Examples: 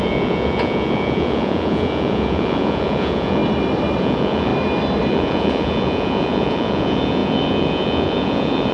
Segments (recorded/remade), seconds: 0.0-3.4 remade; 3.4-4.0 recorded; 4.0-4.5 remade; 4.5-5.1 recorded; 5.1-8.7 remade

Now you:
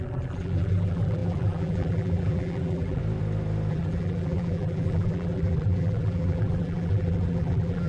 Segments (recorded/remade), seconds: 0.0-3.0 remade; 3.0-3.7 recorded; 3.7-7.9 remade

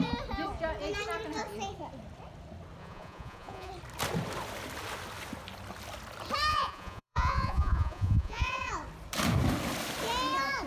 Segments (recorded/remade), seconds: 0.0-2.8 recorded; 2.8-3.7 remade; 3.7-6.5 recorded; 6.5-8.7 remade; 8.7-10.7 recorded

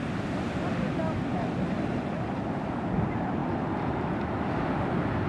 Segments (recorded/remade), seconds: 0.0-1.3 recorded; 1.3-2.5 remade; 2.5-3.4 recorded; 3.4-4.1 remade; 4.1-5.3 recorded

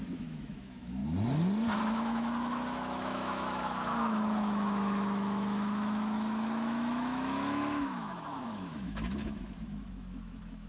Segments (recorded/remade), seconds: 0.0-1.0 remade; 1.0-1.8 recorded; 1.8-10.7 remade

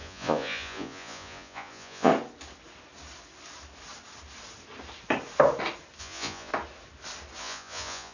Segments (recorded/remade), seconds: 0.0-2.1 remade; 2.1-6.0 recorded; 6.0-6.5 remade; 6.5-7.4 recorded; 7.4-8.1 remade

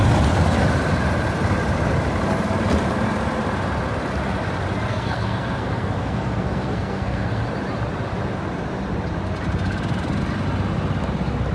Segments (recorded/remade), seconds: 0.0-4.9 recorded; 4.9-7.4 remade; 7.4-11.5 recorded

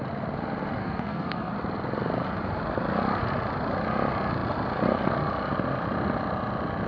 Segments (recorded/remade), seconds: 0.0-0.8 recorded; 0.8-1.5 remade; 1.5-6.9 recorded